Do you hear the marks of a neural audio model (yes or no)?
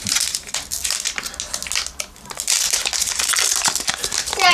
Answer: no